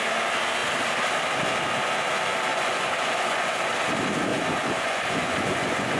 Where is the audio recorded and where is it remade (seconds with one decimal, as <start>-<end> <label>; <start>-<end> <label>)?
0.0-2.5 recorded; 2.5-3.6 remade; 3.6-4.3 recorded; 4.3-6.0 remade